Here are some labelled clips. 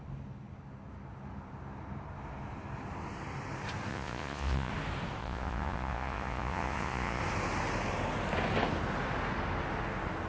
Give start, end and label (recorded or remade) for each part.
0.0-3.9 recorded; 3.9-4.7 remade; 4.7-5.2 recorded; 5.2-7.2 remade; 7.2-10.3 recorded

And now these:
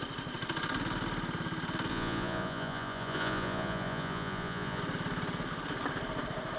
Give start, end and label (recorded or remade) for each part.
0.0-1.9 recorded; 1.9-4.8 remade; 4.8-6.6 recorded

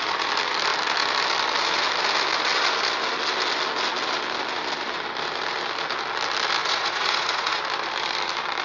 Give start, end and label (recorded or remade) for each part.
0.0-6.6 recorded; 6.6-7.6 remade; 7.6-8.6 recorded

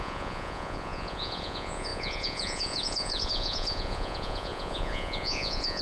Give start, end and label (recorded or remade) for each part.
0.0-5.8 remade

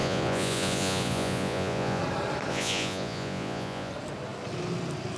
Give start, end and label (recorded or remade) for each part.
0.0-2.0 remade; 2.0-2.5 recorded; 2.5-3.9 remade; 3.9-5.2 recorded